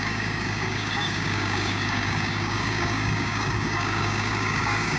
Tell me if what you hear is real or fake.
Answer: fake